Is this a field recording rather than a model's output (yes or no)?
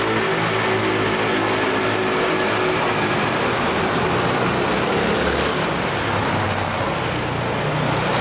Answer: yes